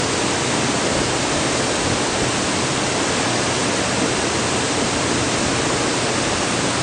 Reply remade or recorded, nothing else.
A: recorded